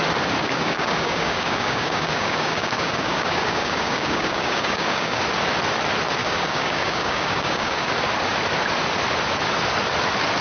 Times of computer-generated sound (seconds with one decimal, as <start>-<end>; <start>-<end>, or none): 0.4-5.2; 6.2-7.9